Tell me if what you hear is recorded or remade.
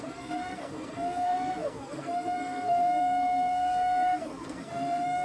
remade